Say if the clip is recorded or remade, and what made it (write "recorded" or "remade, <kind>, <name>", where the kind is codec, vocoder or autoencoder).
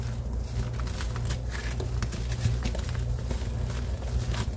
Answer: recorded